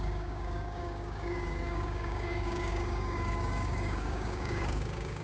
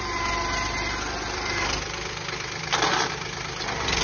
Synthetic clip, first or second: first